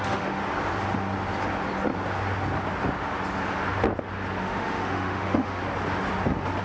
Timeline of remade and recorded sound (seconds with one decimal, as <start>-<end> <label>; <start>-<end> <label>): 0.0-0.4 remade; 0.4-4.4 recorded; 4.4-5.6 remade; 5.6-6.6 recorded